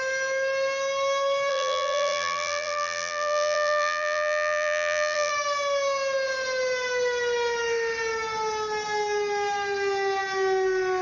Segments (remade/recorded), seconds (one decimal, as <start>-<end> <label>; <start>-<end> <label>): 0.0-1.5 recorded; 1.5-5.3 remade; 5.3-11.0 recorded